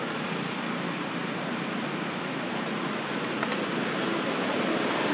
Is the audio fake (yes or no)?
no